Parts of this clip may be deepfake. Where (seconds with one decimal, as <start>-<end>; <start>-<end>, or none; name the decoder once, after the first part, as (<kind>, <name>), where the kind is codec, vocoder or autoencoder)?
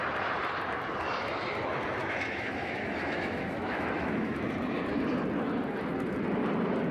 2.0-4.5 (autoencoder, DAC-VAE)